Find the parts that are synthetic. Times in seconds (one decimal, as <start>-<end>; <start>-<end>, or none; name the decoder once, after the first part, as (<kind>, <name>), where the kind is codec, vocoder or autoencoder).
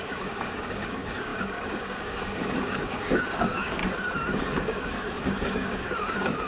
0.0-3.8 (codec, DAC); 4.4-6.5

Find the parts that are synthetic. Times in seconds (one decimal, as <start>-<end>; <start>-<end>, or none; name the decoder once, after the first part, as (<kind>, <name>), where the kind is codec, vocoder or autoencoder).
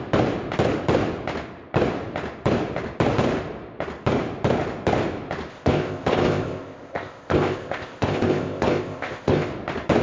5.5-9.5 (codec, ZipCodec)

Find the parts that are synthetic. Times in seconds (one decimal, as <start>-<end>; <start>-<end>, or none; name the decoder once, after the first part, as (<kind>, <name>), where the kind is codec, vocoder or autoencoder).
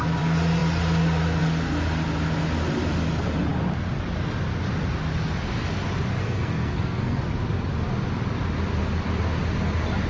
6.2-7.3 (codec, SNAC)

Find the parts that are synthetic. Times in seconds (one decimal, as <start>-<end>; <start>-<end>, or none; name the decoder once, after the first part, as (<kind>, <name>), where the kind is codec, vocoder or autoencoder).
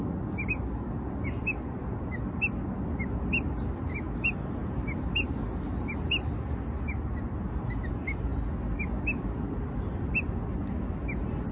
none